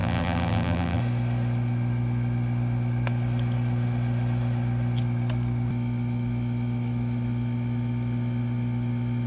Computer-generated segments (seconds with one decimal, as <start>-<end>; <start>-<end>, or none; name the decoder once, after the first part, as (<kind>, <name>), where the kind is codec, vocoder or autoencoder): 0.0-1.0 (vocoder, BigVGAN v2)